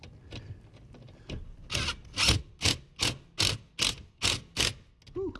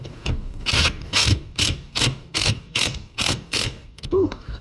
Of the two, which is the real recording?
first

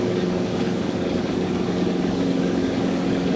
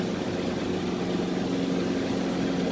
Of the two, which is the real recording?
second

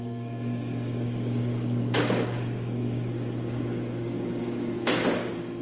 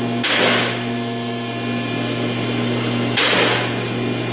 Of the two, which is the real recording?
second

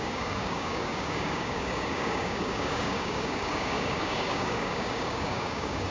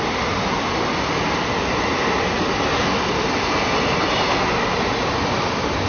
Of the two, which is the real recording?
second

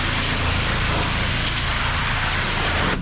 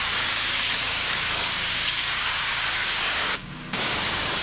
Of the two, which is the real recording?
first